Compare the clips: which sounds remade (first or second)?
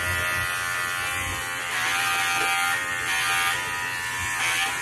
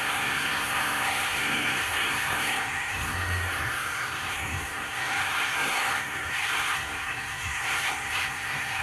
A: second